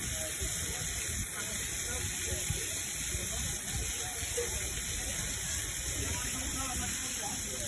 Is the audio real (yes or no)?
yes